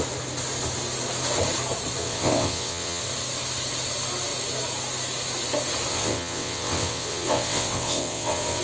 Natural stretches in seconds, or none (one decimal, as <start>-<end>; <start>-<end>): 0.0-2.0; 3.0-5.9